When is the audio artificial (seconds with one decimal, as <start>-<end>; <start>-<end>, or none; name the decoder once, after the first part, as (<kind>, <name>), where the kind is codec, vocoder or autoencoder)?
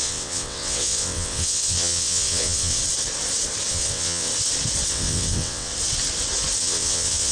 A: 0.0-2.8 (vocoder, WaveNeXt); 3.7-4.3; 4.9-5.7; 6.6-7.3